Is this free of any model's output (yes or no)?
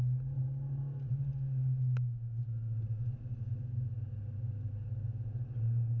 yes